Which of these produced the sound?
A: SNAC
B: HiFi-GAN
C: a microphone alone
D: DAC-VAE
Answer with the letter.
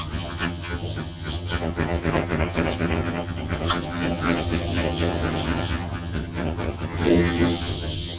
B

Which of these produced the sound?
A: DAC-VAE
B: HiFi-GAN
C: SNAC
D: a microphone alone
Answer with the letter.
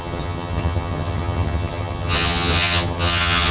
B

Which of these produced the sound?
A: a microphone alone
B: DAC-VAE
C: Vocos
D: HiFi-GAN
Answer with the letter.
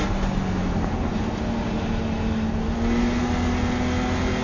A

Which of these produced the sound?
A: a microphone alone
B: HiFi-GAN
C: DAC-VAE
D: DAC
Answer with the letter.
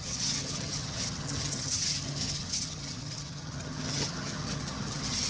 B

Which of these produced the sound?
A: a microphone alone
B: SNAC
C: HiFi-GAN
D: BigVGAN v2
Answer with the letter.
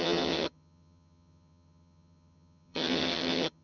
C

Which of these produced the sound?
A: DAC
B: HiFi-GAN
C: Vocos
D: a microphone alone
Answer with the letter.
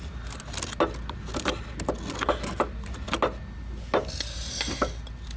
D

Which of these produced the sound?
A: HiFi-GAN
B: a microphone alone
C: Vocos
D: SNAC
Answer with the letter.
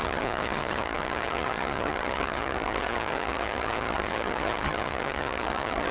A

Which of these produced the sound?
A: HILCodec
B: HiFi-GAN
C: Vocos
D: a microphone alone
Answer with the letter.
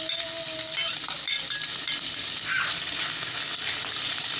D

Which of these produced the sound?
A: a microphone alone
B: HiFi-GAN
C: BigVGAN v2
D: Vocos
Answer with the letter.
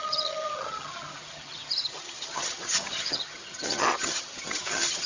B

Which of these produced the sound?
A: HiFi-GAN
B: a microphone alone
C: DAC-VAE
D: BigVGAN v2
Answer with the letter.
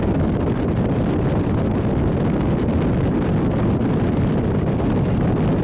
B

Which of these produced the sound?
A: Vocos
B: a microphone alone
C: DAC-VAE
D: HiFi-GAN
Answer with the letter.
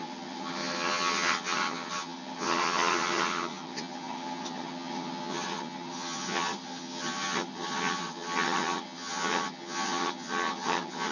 D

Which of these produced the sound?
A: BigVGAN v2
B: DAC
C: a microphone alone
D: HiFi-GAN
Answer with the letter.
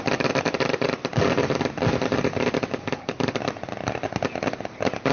C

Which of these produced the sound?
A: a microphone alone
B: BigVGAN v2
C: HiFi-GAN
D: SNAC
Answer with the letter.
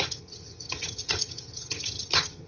C